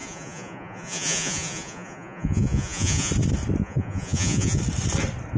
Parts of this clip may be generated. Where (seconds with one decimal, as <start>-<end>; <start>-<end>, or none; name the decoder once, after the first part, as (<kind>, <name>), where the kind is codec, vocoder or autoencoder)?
0.0-3.1 (vocoder, Vocos); 3.6-4.6